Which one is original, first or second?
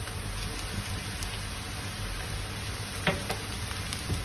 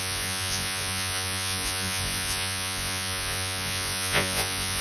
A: first